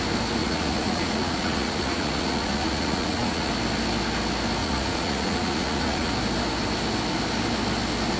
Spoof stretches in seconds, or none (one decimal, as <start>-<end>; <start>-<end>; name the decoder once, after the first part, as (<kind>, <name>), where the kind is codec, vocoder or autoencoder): 0.4-3.5 (vocoder, Vocos); 4.6-6.1